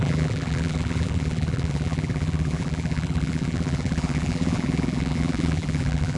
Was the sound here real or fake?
fake